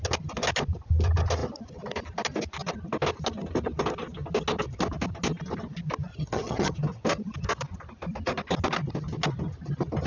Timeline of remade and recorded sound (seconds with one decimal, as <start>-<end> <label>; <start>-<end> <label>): 0.0-6.1 recorded; 6.1-6.7 remade; 6.7-10.1 recorded